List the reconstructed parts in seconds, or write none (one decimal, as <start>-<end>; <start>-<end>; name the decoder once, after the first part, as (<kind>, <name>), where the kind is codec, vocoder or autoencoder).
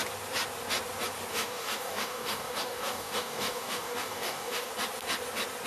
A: 1.3-4.7 (codec, DAC)